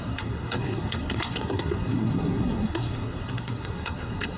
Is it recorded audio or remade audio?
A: remade